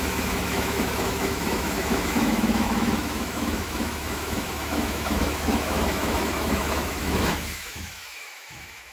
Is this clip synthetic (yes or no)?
yes